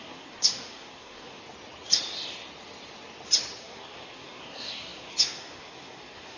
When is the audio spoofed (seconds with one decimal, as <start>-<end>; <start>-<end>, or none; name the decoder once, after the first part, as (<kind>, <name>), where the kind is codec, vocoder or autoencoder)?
0.0-1.4 (codec, SNAC); 3.6-6.4